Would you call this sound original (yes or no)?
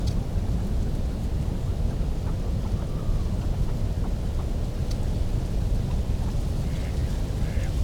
yes